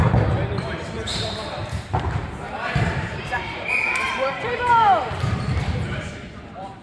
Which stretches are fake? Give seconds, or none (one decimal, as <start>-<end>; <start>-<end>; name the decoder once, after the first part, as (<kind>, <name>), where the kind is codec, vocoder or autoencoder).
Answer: 1.1-5.2 (vocoder, BigVGAN v2)